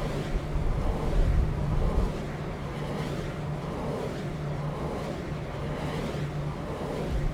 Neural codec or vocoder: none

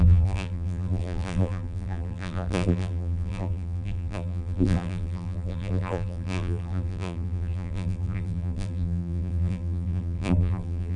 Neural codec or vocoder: vocoder, BigVGAN v2